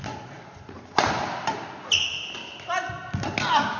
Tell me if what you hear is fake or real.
real